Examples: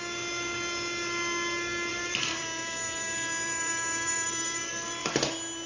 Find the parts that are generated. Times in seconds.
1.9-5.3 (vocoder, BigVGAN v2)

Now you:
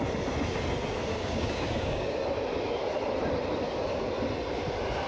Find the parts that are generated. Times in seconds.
1.1-2.2 (codec, DAC)

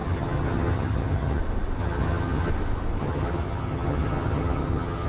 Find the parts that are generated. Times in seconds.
0.0-1.4 (vocoder, HiFi-GAN); 1.8-2.5; 3.0-5.1

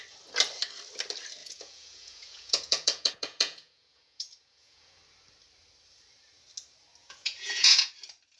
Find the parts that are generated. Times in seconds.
1.4-5.0 (vocoder, Vocos); 7.0-7.9